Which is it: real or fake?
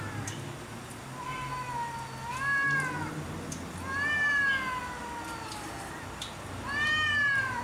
real